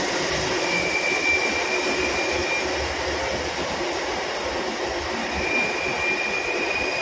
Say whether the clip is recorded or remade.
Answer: recorded